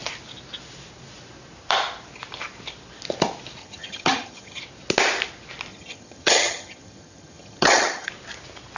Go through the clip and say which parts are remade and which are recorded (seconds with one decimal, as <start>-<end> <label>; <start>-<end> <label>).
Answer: 0.0-3.6 recorded; 3.6-4.6 remade; 4.6-5.7 recorded; 5.7-8.1 remade; 8.1-8.8 recorded